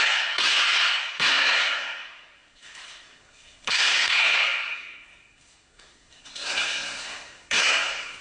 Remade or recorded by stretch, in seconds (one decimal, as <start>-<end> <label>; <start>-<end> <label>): 0.0-8.2 remade

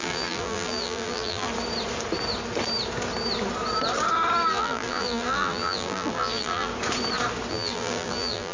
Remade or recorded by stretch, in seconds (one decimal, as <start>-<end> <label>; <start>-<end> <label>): 0.0-1.5 remade; 1.5-4.5 recorded; 4.5-6.7 remade; 6.7-7.5 recorded; 7.5-8.5 remade

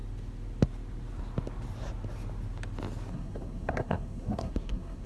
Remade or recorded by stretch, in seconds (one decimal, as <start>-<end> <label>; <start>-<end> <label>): 0.0-3.1 recorded; 3.1-5.1 remade

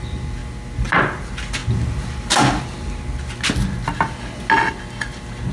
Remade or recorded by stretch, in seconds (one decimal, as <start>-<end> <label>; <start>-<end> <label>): 0.0-5.5 recorded

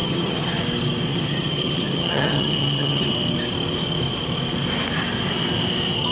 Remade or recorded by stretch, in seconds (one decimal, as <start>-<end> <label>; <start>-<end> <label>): 0.0-0.6 remade; 0.6-1.1 recorded; 1.1-3.1 remade; 3.1-6.1 recorded

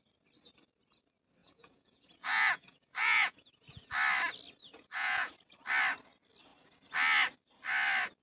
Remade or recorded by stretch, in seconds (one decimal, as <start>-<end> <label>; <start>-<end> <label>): 0.0-1.4 recorded; 1.4-3.9 remade; 3.9-4.6 recorded; 4.6-5.3 remade; 5.3-8.2 recorded